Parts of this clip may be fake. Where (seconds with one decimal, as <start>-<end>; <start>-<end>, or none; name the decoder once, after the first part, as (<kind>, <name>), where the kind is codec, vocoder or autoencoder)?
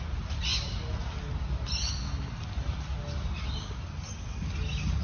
none